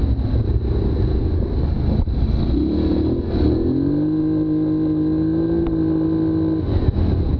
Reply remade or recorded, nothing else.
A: recorded